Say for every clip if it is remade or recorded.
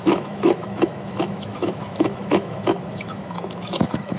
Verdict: remade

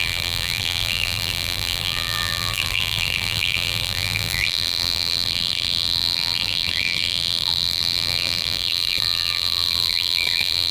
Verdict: remade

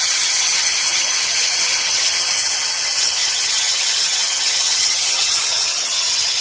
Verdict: remade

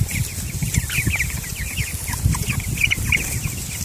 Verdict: recorded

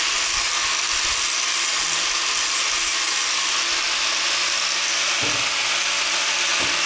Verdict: recorded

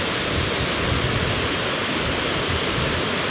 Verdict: recorded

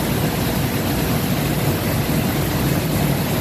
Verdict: recorded